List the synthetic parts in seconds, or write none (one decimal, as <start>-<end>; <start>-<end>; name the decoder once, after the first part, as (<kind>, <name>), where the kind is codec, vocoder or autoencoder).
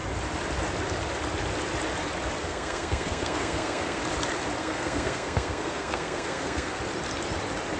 2.4-4.0 (codec, SNAC); 4.6-6.8